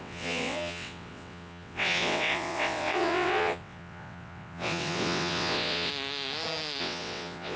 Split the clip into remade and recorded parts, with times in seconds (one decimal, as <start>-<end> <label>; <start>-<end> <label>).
0.0-5.9 remade; 5.9-6.8 recorded; 6.8-7.6 remade